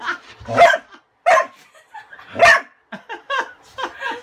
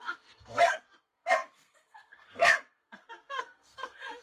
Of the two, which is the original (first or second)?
first